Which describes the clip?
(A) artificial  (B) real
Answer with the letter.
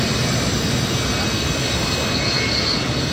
B